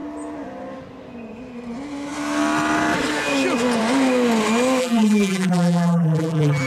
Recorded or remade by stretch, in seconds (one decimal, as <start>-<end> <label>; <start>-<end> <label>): 0.0-4.8 recorded; 4.8-6.7 remade